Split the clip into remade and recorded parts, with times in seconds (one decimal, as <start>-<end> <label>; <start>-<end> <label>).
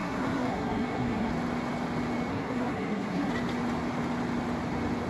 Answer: 0.0-1.3 remade; 1.3-2.3 recorded; 2.3-3.3 remade; 3.3-5.1 recorded